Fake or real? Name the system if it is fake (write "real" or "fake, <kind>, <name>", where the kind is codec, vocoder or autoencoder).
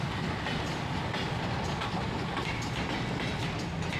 real